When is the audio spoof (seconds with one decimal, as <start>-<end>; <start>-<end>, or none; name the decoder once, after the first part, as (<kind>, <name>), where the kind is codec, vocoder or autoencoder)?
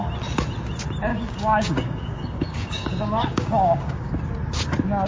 1.1-4.2 (codec, DAC)